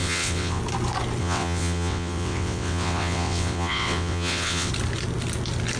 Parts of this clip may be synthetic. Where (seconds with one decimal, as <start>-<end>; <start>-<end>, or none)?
0.0-0.6; 1.2-4.7